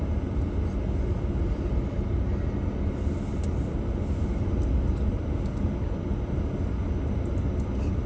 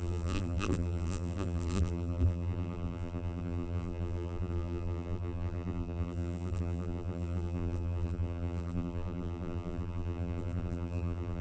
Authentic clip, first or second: first